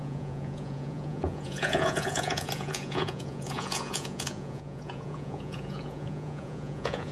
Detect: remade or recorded remade